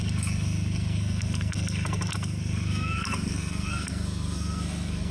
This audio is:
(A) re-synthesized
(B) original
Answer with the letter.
A